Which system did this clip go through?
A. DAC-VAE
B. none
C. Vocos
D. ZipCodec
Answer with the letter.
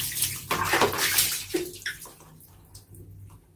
B